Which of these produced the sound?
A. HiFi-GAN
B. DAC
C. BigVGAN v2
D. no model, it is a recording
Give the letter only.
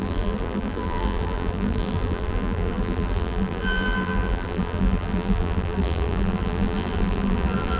C